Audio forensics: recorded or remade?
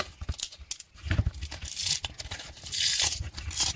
recorded